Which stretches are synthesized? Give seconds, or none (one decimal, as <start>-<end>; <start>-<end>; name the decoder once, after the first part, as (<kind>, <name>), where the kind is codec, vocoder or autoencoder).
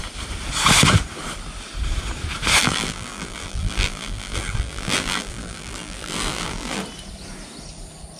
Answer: 2.6-6.8 (vocoder, BigVGAN v2)